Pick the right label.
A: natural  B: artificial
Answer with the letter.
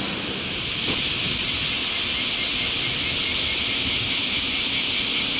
A